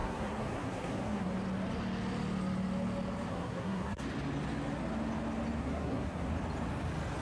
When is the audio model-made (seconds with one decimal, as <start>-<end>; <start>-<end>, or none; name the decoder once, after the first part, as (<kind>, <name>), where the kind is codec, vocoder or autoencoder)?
0.0-1.3 (codec, SNAC); 3.3-4.0; 5.6-6.3